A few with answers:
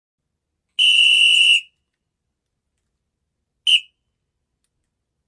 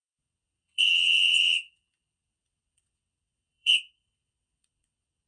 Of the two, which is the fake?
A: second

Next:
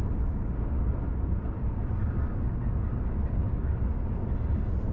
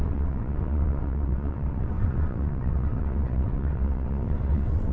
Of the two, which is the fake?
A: second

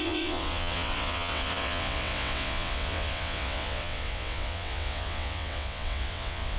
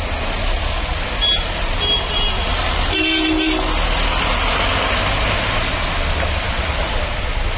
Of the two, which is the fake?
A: first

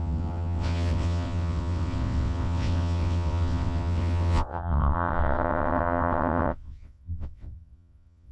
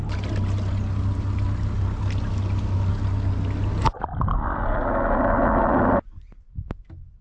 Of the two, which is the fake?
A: first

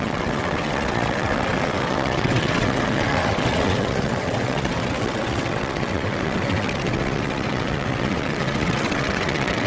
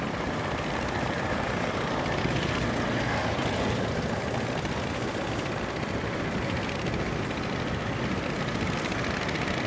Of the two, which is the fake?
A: first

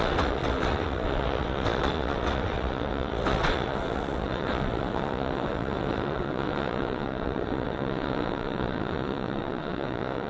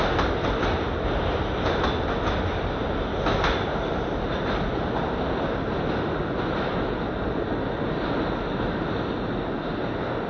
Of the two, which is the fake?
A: first